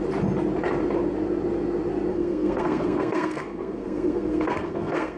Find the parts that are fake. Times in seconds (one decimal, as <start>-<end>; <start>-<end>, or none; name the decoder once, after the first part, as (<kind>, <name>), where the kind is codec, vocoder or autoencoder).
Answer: 2.1-5.2 (codec, SNAC)